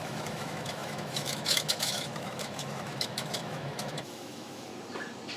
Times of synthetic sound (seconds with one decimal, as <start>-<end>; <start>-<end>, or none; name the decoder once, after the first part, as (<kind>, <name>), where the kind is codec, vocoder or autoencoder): 0.0-4.7 (autoencoder, DAC-VAE)